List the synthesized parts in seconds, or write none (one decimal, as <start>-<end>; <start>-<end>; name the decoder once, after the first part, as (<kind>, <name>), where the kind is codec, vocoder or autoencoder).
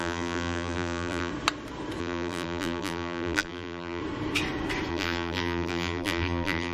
0.0-1.3 (vocoder, BigVGAN v2); 2.0-4.0; 4.9-6.7